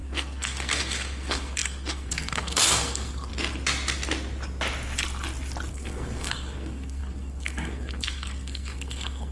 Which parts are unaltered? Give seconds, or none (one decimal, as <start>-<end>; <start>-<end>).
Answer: 3.3-5.7